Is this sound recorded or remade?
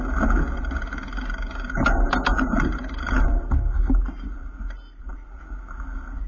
recorded